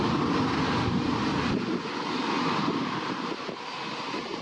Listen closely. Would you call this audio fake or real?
real